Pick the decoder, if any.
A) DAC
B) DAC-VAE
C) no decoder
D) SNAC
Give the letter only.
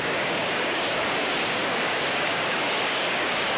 A